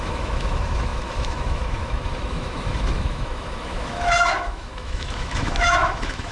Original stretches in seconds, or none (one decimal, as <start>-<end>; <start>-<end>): none